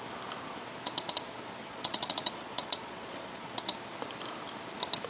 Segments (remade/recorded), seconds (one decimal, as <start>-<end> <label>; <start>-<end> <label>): 0.0-1.6 recorded; 1.6-3.6 remade; 3.6-5.1 recorded